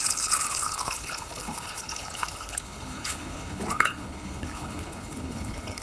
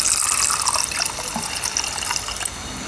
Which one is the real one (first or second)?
second